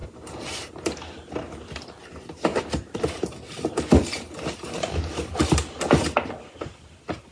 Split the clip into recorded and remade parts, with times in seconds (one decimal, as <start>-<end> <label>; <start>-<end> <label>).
0.0-7.3 recorded